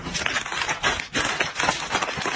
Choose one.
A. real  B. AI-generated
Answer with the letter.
A